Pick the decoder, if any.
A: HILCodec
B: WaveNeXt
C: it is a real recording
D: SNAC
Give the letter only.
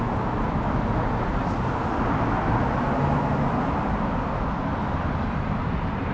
C